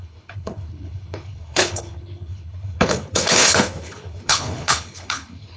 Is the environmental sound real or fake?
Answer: fake